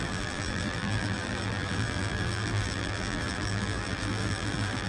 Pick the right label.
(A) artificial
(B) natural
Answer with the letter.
A